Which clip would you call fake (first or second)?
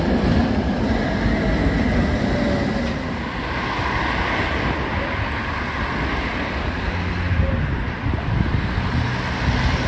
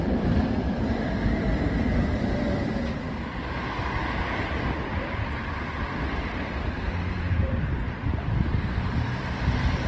second